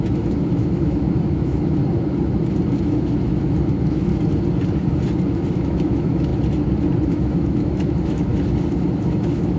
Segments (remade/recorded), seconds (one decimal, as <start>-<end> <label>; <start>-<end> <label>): 0.0-1.8 remade; 1.8-2.8 recorded; 2.8-4.1 remade; 4.1-5.3 recorded; 5.3-6.3 remade; 6.3-7.1 recorded; 7.1-8.3 remade; 8.3-9.0 recorded; 9.0-9.6 remade